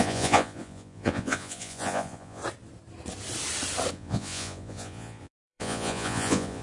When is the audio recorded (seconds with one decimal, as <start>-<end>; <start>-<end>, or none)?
2.4-3.9